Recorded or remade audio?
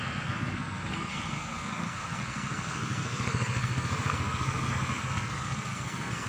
remade